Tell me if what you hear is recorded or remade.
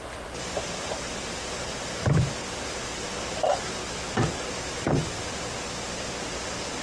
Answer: remade